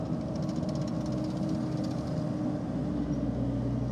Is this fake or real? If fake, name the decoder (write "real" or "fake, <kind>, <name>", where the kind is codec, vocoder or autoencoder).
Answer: real